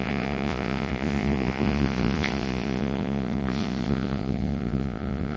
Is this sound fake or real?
fake